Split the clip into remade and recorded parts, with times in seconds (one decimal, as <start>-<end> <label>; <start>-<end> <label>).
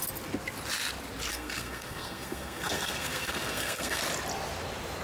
0.0-1.3 recorded; 1.3-4.0 remade; 4.0-5.0 recorded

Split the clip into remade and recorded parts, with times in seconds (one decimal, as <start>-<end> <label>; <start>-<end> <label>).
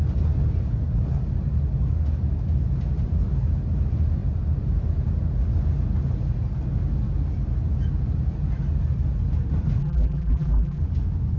0.0-9.8 recorded; 9.8-10.8 remade; 10.8-11.4 recorded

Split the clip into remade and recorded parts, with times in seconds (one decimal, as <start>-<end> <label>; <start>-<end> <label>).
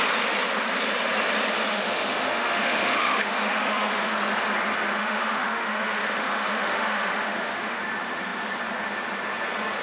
0.0-1.7 recorded; 1.7-4.1 remade; 4.1-5.0 recorded; 5.0-7.8 remade; 7.8-9.8 recorded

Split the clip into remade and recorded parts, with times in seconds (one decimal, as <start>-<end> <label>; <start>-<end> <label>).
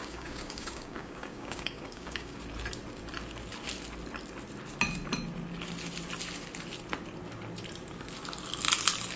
0.0-2.4 remade; 2.4-9.2 recorded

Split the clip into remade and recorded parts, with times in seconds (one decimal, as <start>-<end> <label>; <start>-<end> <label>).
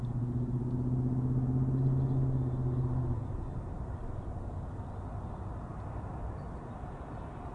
0.0-0.6 remade; 0.6-7.5 recorded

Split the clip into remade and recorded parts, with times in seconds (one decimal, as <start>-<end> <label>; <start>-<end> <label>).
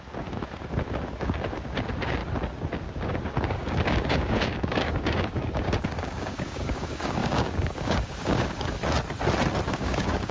0.0-2.2 remade; 2.2-2.8 recorded; 2.8-8.8 remade; 8.8-9.7 recorded; 9.7-10.3 remade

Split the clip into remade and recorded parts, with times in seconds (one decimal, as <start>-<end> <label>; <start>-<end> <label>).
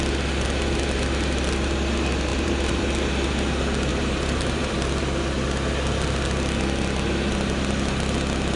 0.0-2.3 recorded; 2.3-2.8 remade; 2.8-3.9 recorded; 3.9-4.9 remade; 4.9-8.6 recorded